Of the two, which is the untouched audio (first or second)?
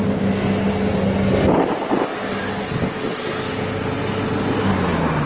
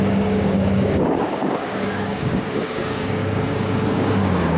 first